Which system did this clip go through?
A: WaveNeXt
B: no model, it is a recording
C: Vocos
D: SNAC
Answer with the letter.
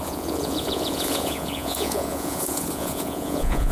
C